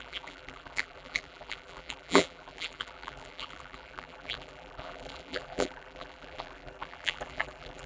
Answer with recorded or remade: remade